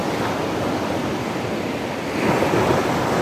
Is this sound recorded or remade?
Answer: recorded